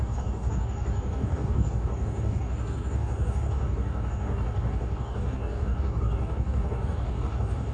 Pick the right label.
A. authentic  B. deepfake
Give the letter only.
B